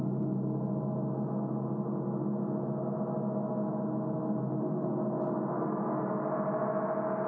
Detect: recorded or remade recorded